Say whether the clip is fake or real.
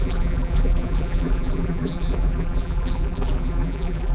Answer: fake